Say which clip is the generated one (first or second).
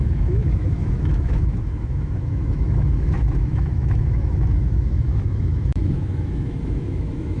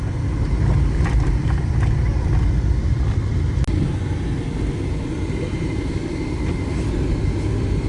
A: first